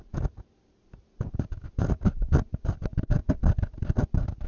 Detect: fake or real real